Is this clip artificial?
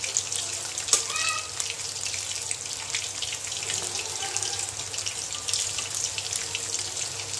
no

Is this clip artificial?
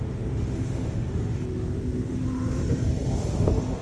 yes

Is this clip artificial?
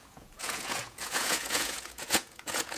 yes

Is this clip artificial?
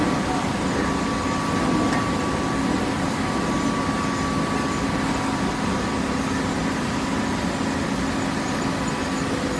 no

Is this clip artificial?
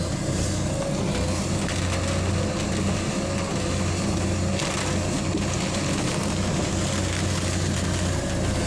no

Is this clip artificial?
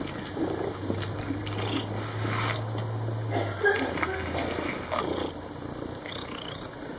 no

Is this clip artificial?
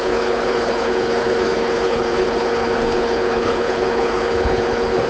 yes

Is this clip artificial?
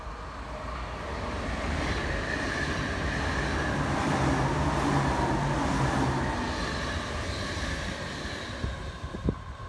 no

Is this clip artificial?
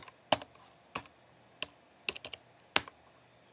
no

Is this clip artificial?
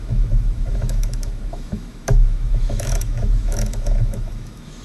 yes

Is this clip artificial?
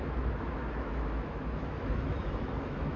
yes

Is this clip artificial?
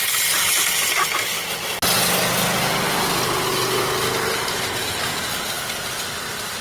no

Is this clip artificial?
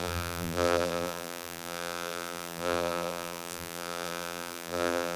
yes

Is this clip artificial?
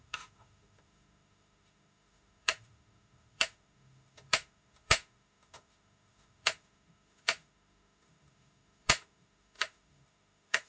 yes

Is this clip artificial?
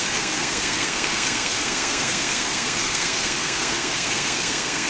yes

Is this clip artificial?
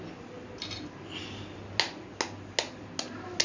no